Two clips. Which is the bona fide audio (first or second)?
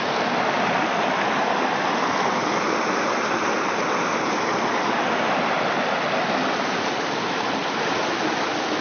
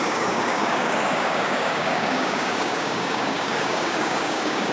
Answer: first